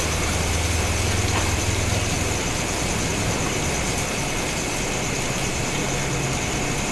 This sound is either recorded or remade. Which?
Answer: recorded